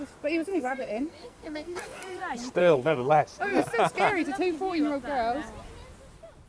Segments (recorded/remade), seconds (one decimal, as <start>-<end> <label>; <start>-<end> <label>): 0.0-0.5 recorded; 0.5-2.2 remade; 2.2-2.6 recorded; 2.6-3.1 remade; 3.1-6.5 recorded